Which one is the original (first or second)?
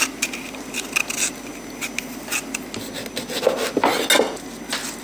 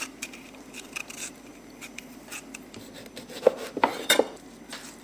first